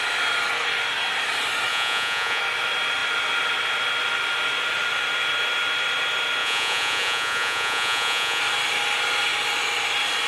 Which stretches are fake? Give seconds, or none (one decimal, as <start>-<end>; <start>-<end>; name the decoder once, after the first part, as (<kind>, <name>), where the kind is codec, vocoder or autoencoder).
1.7-2.4 (vocoder, Vocos); 6.4-8.4